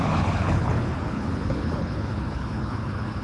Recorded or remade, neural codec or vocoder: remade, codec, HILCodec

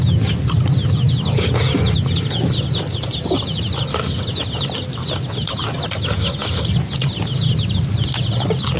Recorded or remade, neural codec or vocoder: recorded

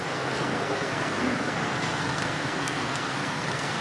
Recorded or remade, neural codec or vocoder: remade, codec, SNAC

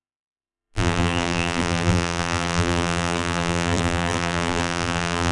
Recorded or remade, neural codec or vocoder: remade, vocoder, BigVGAN v2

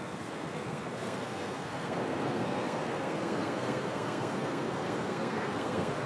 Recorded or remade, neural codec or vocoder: remade, codec, SNAC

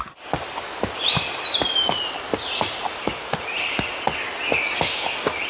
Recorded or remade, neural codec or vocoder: recorded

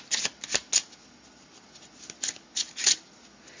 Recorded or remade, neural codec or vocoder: recorded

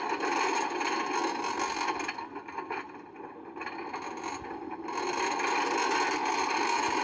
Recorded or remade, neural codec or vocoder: recorded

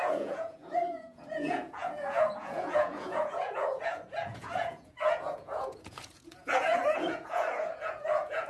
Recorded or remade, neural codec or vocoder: remade, vocoder, Vocos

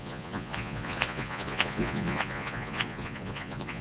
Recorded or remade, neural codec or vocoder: remade, vocoder, Vocos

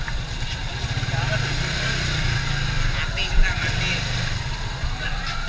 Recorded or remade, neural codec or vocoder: recorded